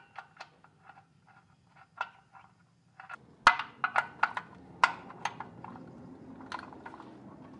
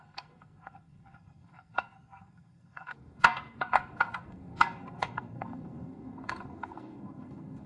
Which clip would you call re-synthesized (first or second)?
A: second